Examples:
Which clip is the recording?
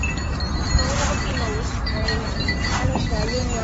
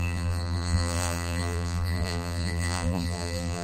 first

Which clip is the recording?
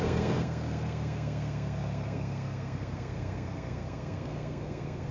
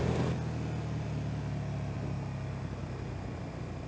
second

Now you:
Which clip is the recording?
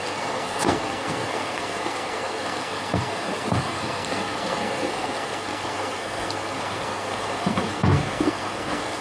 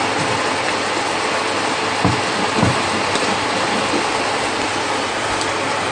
second